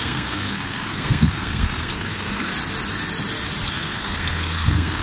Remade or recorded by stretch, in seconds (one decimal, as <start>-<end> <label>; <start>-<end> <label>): 0.0-2.5 remade; 2.5-3.7 recorded; 3.7-5.0 remade

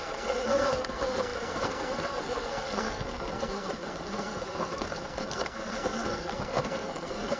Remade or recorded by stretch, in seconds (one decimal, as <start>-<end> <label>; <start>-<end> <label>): 0.0-7.4 remade

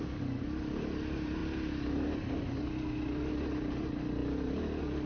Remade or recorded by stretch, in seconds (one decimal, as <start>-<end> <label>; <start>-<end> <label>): 0.0-5.1 recorded

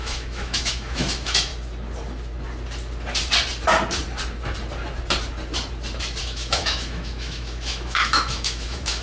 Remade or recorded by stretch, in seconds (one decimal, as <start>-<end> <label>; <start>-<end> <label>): 0.0-1.5 remade; 1.5-6.2 recorded; 6.2-9.0 remade